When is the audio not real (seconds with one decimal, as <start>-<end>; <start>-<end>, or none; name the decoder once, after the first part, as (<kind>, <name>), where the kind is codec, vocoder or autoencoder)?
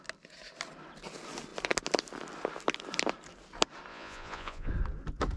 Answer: 3.9-4.7 (vocoder, Vocos)